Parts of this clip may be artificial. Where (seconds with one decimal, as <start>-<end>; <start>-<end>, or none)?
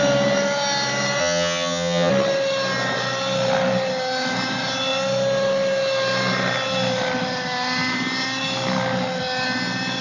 1.2-2.1